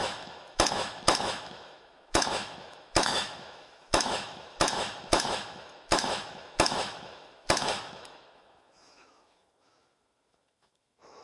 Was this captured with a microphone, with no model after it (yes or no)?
no